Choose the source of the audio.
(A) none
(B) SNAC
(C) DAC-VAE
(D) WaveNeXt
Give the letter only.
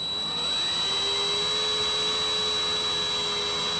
A